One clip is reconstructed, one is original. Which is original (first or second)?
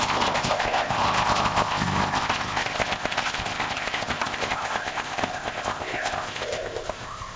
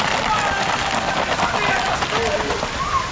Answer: second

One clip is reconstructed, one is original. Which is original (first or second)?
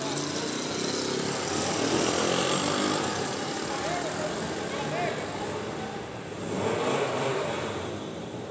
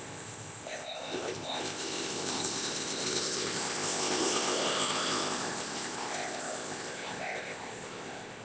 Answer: first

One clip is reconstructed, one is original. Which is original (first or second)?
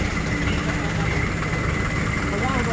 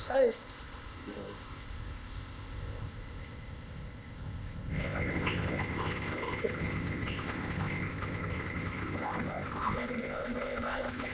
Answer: first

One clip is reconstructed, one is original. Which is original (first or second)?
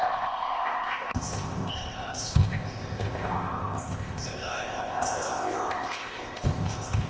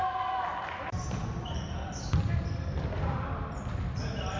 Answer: second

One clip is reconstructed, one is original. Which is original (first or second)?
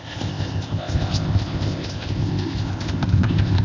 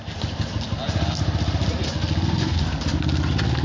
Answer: second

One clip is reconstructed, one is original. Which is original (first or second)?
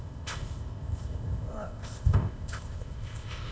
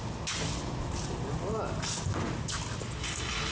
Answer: second